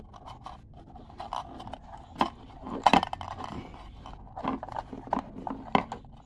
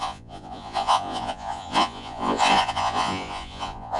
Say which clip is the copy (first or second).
second